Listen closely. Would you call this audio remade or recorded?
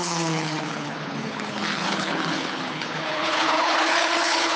remade